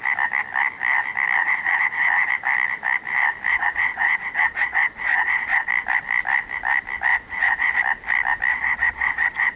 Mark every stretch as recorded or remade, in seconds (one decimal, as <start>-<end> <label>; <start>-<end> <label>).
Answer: 0.0-1.4 recorded; 1.4-2.3 remade; 2.3-3.5 recorded; 3.5-5.7 remade; 5.7-7.1 recorded; 7.1-7.8 remade; 7.8-8.5 recorded; 8.5-9.6 remade

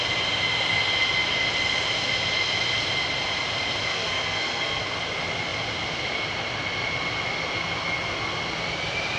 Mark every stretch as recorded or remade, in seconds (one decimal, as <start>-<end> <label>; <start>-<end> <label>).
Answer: 0.0-3.9 recorded; 3.9-4.8 remade; 4.8-9.2 recorded

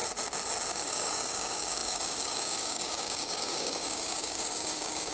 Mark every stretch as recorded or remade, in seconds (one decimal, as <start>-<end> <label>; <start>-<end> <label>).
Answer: 0.0-0.7 recorded; 0.7-5.1 remade

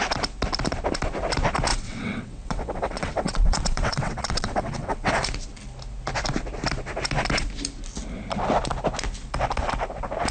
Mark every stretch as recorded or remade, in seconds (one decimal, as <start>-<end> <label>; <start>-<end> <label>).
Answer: 0.0-1.7 recorded; 1.7-5.1 remade; 5.1-10.3 recorded

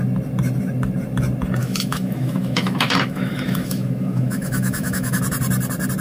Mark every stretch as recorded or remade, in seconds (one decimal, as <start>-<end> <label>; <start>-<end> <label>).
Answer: 0.0-1.6 recorded; 1.6-5.2 remade; 5.2-6.0 recorded

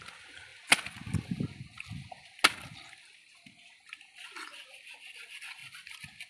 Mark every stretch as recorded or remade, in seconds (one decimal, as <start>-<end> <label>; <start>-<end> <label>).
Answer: 0.0-6.3 recorded

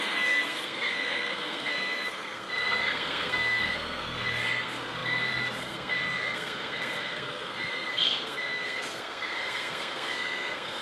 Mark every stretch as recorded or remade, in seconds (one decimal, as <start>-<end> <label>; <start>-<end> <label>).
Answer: 0.0-10.8 remade